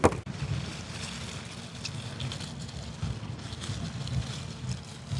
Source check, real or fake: real